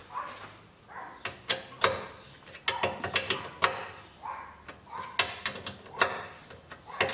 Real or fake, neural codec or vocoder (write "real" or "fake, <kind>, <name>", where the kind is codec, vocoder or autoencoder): real